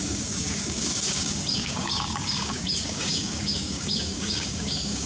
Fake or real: fake